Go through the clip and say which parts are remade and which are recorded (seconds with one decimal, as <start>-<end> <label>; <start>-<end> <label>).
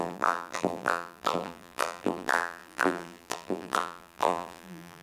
0.0-5.0 remade